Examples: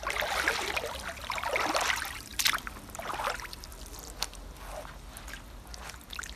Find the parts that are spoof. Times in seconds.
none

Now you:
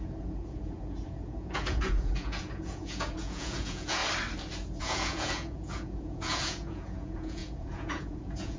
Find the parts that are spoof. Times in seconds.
0.0-4.0 (vocoder, Vocos); 4.8-8.6

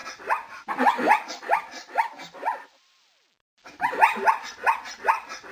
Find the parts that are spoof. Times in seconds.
none